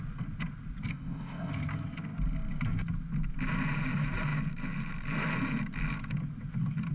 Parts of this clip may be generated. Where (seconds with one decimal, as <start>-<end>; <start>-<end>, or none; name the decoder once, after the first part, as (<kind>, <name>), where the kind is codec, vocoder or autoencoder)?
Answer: 0.9-1.5 (codec, ZipCodec)